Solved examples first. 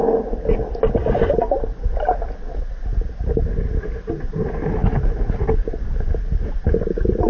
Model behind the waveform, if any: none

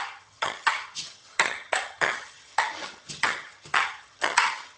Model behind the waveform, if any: vocoder, HiFi-GAN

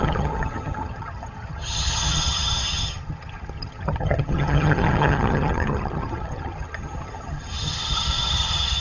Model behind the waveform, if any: vocoder, HiFi-GAN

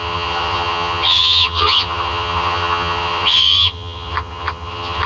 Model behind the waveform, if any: vocoder, HiFi-GAN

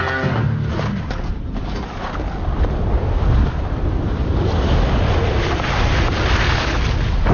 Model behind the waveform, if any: none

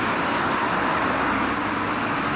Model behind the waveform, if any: none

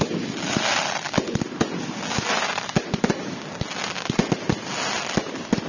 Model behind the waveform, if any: none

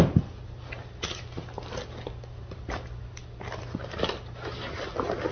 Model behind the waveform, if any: none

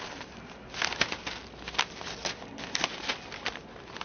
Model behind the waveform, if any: none